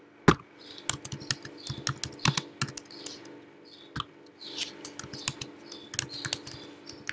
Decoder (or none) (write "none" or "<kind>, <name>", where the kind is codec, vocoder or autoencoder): none